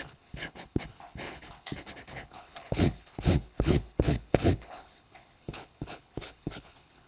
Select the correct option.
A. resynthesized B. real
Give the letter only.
A